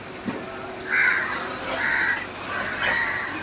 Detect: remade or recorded recorded